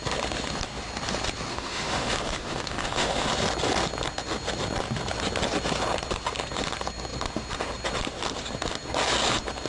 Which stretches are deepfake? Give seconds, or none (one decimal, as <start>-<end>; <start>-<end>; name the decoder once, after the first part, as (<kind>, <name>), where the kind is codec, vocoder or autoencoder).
1.5-3.3 (autoencoder, DAC-VAE)